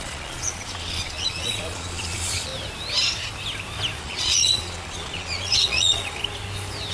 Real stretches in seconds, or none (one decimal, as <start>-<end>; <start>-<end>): 2.5-4.0; 6.2-6.9